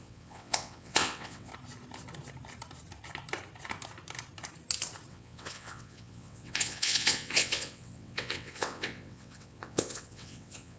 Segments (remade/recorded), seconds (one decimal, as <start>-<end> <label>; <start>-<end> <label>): 0.0-1.5 remade; 1.5-5.1 recorded; 5.1-10.8 remade